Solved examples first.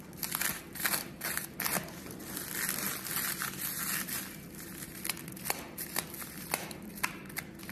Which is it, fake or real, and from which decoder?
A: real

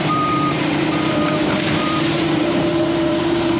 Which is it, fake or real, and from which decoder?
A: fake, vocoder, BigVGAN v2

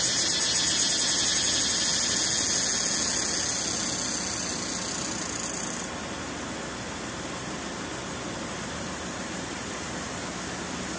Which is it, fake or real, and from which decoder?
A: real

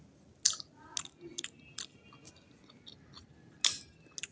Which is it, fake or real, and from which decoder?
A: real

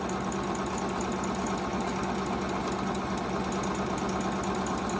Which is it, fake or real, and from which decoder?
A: real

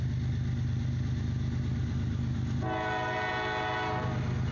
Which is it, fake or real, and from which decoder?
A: real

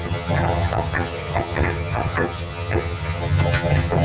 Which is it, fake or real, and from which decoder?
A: fake, vocoder, HiFi-GAN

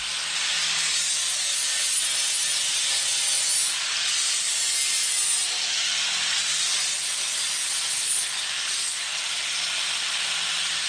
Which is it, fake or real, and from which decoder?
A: real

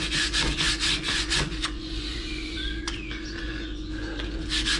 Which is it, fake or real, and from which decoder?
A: fake, vocoder, Vocos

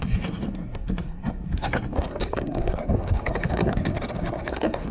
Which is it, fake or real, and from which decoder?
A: fake, codec, SNAC